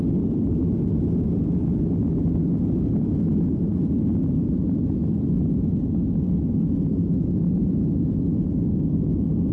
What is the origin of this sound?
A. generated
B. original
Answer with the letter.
B